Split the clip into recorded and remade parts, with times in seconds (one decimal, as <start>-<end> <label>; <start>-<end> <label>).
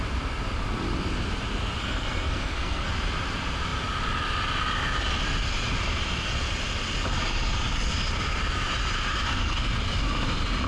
0.0-1.8 recorded; 1.8-2.9 remade; 2.9-9.1 recorded; 9.1-9.7 remade; 9.7-10.7 recorded